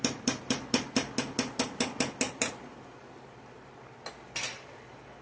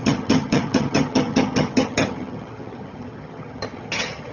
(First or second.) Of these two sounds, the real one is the first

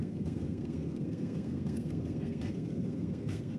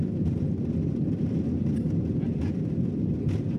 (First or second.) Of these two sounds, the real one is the second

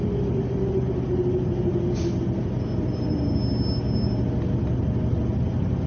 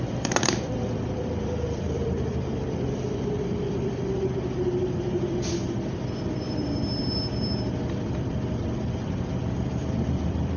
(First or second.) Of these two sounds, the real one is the first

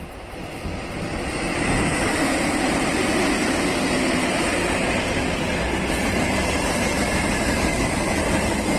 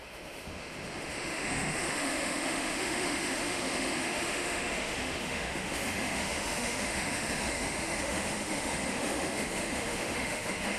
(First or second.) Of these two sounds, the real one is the first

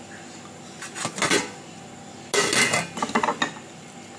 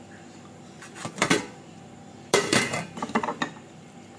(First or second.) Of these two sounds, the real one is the first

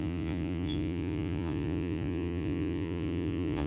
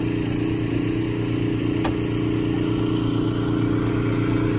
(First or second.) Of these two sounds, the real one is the second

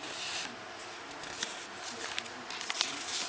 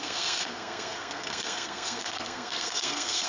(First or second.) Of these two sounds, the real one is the first